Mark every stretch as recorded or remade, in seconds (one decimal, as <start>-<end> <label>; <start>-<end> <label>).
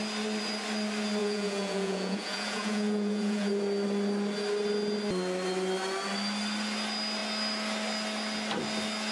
0.0-1.2 recorded; 1.2-3.6 remade; 3.6-9.1 recorded